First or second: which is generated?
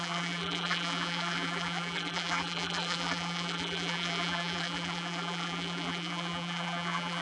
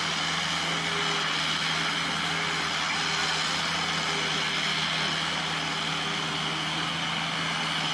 first